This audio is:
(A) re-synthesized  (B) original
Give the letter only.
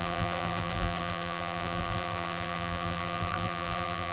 A